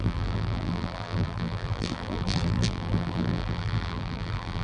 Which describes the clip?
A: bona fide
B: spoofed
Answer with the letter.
B